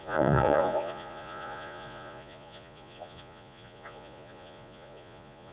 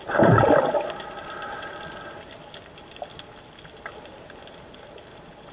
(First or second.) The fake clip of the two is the first